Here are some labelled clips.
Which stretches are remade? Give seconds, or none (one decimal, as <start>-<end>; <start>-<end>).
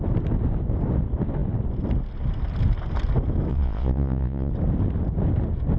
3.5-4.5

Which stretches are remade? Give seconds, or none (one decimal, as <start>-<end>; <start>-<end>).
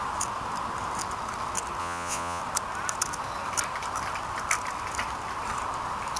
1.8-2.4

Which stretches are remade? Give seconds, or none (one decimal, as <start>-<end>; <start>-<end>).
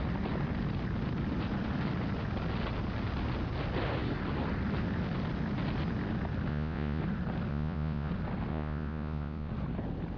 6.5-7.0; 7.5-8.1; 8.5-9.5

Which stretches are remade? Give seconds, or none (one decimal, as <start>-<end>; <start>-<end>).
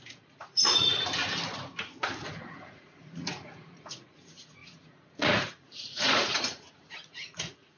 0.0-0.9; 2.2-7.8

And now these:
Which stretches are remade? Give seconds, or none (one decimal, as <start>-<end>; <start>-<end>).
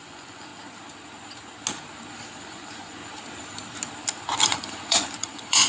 0.0-0.5; 2.4-3.0; 4.4-5.7